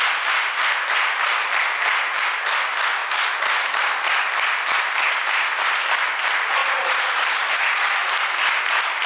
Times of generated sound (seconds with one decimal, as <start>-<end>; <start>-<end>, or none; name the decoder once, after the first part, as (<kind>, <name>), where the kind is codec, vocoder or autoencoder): 6.6-7.9 (vocoder, BigVGAN v2)